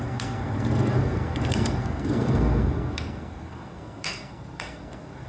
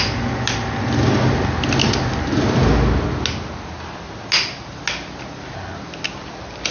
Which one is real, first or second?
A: second